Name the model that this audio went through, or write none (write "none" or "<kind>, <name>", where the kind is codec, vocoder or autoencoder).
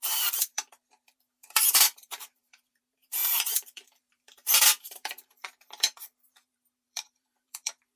vocoder, BigVGAN v2